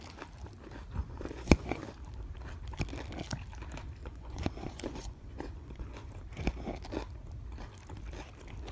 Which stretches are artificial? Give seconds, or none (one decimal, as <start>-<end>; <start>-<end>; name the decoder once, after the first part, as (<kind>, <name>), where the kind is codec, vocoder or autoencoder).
1.0-1.8 (vocoder, Vocos); 4.0-6.1